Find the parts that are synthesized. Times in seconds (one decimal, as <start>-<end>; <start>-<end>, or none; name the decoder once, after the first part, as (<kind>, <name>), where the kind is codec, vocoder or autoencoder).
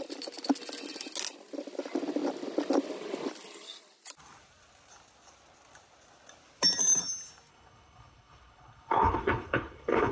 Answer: 7.5-10.1 (codec, HILCodec)